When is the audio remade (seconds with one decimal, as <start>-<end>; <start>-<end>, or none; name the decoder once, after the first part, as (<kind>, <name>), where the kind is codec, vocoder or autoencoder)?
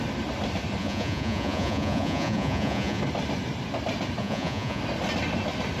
0.8-3.0 (vocoder, Vocos); 4.2-4.8